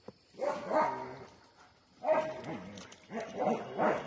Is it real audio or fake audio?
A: real